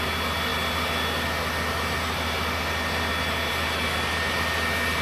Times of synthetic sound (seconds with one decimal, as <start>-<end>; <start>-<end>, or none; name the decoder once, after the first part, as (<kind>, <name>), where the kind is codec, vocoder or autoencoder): none